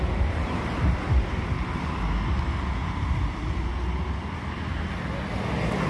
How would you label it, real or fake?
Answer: real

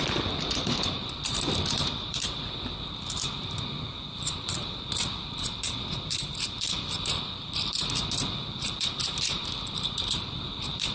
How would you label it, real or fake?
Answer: fake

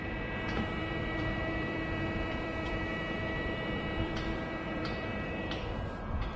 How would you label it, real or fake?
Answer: fake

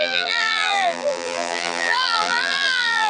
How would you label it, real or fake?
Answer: fake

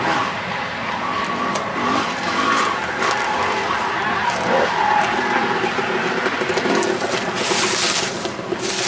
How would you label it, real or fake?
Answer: fake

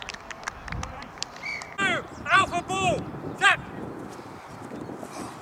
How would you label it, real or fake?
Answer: real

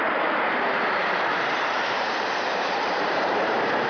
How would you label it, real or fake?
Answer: fake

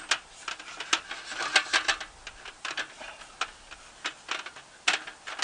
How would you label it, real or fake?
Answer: real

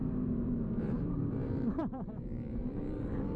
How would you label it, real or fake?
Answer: fake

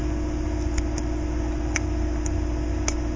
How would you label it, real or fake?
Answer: real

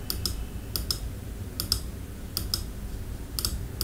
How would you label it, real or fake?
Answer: real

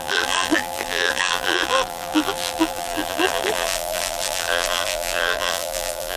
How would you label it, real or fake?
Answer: fake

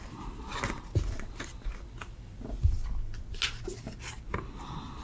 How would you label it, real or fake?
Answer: real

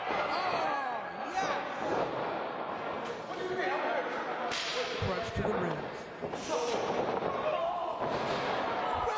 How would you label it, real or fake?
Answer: real